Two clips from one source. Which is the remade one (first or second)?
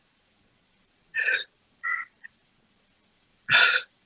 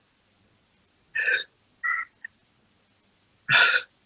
first